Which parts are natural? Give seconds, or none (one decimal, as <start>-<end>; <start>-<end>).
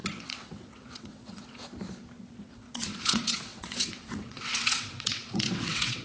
1.6-2.4